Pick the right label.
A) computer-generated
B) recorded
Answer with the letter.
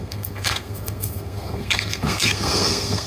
A